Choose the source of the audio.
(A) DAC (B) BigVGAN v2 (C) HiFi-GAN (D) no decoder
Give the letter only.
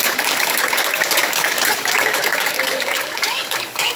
A